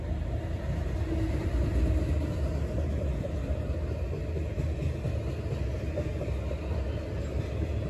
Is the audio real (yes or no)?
yes